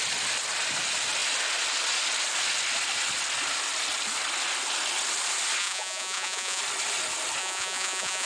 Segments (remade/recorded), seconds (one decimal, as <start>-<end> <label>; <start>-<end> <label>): 0.0-5.6 recorded; 5.6-6.6 remade; 6.6-7.4 recorded; 7.4-8.3 remade